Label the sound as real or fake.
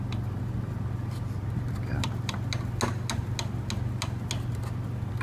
real